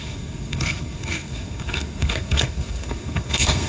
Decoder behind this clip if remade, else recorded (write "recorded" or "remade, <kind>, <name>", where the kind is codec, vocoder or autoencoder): remade, codec, SNAC